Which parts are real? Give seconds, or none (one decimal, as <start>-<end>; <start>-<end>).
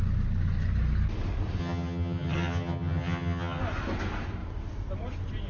0.0-1.6; 3.6-5.5